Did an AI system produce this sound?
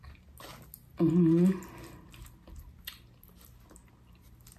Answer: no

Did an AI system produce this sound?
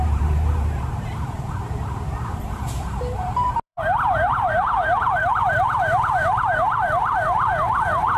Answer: yes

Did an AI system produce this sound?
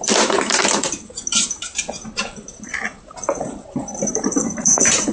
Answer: yes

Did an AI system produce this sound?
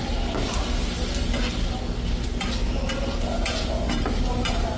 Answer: no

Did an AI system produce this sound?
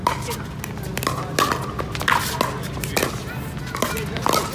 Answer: no